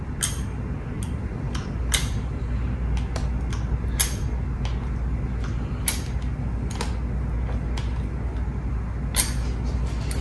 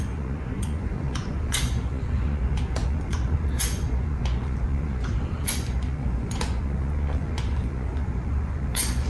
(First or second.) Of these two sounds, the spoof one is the second